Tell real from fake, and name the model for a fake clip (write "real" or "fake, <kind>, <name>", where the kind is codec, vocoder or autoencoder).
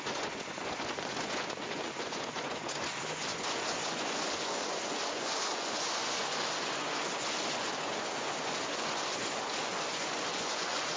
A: fake, vocoder, Vocos